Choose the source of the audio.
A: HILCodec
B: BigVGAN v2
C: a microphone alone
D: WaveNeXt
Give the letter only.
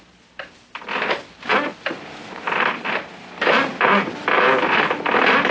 C